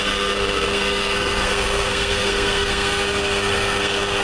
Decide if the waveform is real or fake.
fake